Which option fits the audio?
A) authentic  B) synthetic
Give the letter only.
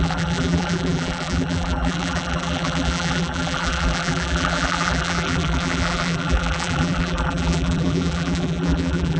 B